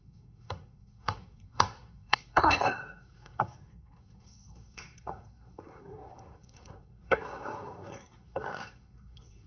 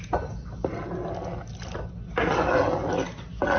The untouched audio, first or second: second